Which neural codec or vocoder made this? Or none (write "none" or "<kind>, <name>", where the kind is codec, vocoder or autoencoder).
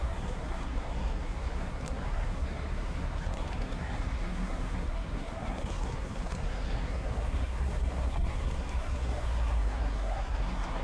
codec, SNAC